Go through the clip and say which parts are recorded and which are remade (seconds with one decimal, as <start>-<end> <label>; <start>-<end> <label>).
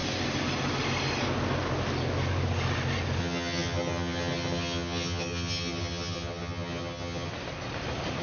0.0-3.2 recorded; 3.2-7.3 remade; 7.3-8.2 recorded